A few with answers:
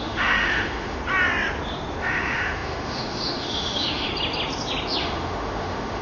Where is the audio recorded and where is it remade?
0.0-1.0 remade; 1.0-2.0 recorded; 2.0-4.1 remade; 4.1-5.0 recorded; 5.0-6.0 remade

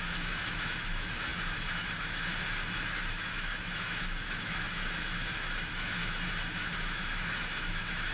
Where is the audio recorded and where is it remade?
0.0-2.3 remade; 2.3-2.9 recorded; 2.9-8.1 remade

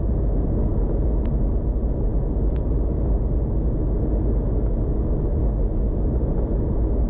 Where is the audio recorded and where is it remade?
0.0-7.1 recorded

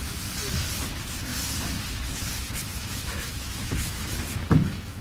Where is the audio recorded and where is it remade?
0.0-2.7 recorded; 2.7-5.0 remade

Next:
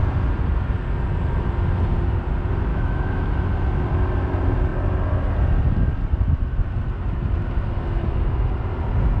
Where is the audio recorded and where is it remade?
0.0-2.7 recorded; 2.7-3.3 remade; 3.3-9.2 recorded

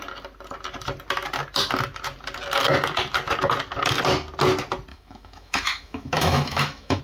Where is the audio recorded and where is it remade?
0.0-4.9 recorded; 4.9-7.0 remade

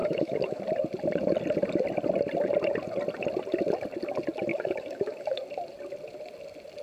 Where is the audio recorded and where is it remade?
0.0-0.6 remade; 0.6-4.5 recorded; 4.5-5.4 remade; 5.4-6.8 recorded